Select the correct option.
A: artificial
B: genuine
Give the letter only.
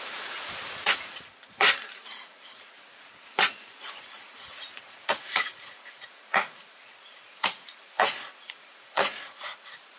A